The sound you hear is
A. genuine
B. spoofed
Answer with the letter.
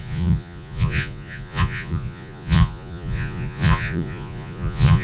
B